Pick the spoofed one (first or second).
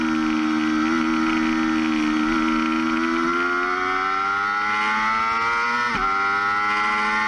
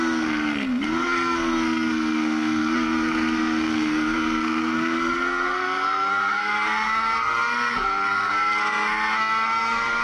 second